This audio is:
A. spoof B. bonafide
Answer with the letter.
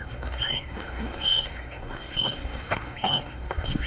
A